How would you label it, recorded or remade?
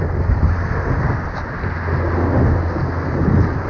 recorded